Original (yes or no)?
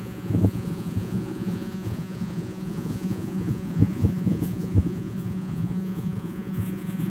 no